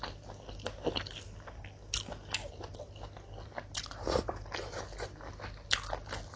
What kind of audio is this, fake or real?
real